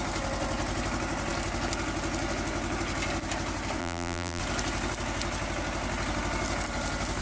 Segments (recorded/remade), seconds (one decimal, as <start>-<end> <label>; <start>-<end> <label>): 0.0-3.8 recorded; 3.8-4.4 remade; 4.4-7.2 recorded